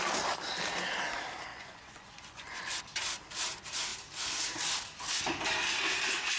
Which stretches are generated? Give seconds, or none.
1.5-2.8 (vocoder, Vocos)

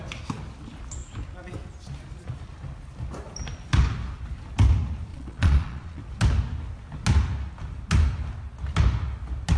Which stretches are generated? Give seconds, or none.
5.1-6.0 (vocoder, Vocos)